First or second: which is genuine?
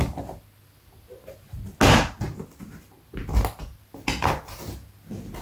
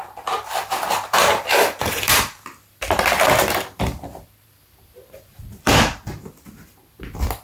first